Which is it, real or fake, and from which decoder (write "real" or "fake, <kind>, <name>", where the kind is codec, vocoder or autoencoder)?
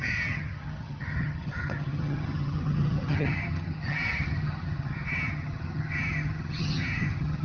fake, vocoder, HiFi-GAN